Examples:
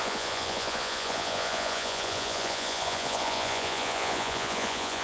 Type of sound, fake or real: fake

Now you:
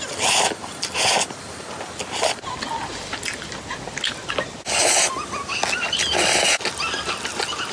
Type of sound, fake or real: real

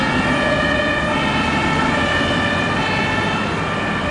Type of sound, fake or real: real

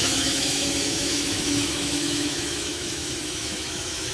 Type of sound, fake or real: fake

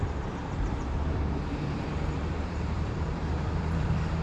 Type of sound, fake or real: fake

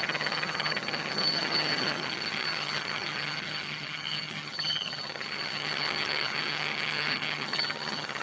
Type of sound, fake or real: fake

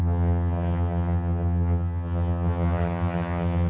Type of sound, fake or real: fake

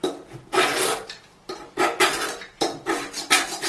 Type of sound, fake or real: real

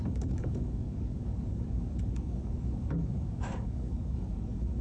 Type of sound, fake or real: fake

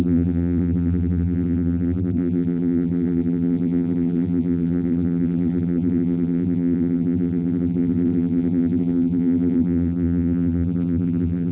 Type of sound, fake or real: fake